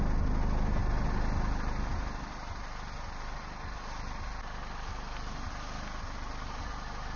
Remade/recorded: recorded